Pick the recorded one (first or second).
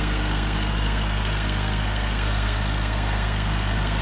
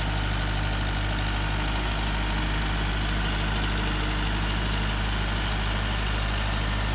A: second